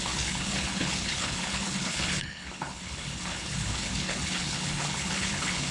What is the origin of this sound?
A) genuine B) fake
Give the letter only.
B